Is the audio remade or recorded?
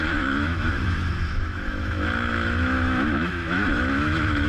remade